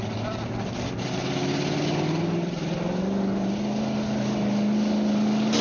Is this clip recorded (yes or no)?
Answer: yes